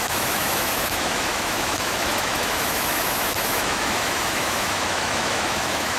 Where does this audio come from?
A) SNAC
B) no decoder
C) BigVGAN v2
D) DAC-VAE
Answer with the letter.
D